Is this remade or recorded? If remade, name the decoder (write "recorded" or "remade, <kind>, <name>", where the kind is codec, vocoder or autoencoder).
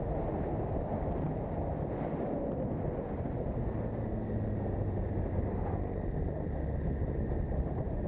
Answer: recorded